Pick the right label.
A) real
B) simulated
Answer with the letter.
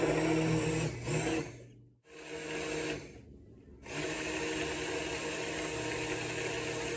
A